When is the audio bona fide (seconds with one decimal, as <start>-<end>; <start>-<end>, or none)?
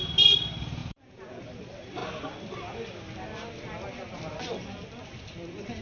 0.0-0.8; 1.4-5.8